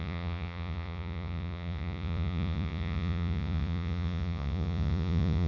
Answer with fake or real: fake